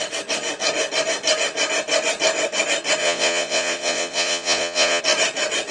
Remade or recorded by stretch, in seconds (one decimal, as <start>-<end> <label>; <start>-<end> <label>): 0.0-3.0 recorded; 3.0-5.0 remade; 5.0-5.7 recorded